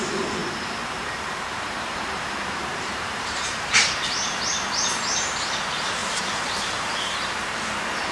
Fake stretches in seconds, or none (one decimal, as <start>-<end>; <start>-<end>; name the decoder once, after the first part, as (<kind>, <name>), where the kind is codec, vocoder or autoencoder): 0.0-8.1 (vocoder, BigVGAN v2)